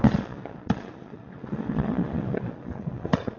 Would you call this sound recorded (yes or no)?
no